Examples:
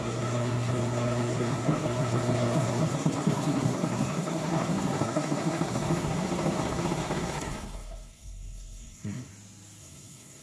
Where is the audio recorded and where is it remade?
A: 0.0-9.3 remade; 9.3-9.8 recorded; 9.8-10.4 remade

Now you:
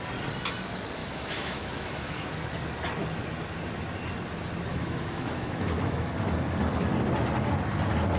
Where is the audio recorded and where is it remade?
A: 0.0-1.0 recorded; 1.0-2.3 remade; 2.3-4.7 recorded; 4.7-6.1 remade; 6.1-8.2 recorded

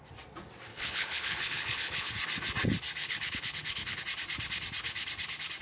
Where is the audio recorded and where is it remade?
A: 0.0-0.7 recorded; 0.7-2.1 remade; 2.1-3.0 recorded; 3.0-4.0 remade; 4.0-5.6 recorded

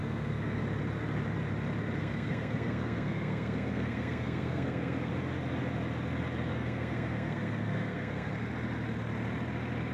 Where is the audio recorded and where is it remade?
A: 0.0-0.6 remade; 0.6-2.0 recorded; 2.0-5.1 remade; 5.1-6.5 recorded; 6.5-8.3 remade; 8.3-9.9 recorded